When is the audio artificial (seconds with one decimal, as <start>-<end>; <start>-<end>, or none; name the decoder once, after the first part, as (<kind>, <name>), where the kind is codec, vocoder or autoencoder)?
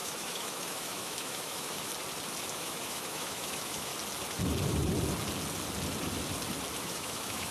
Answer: 0.0-1.9 (autoencoder, DAC-VAE); 2.5-3.9; 6.8-7.5